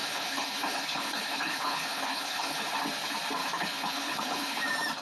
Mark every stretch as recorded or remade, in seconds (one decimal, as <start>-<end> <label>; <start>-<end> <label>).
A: 0.0-2.7 remade; 2.7-3.4 recorded; 3.4-4.6 remade; 4.6-5.0 recorded